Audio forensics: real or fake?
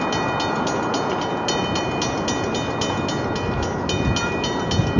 real